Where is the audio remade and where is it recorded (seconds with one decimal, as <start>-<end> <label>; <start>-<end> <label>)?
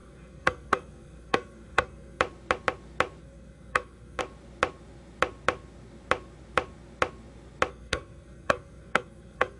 0.0-2.2 remade; 2.2-3.2 recorded; 3.2-4.2 remade; 4.2-7.7 recorded; 7.7-9.6 remade